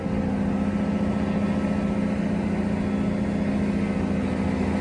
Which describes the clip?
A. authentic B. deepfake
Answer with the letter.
A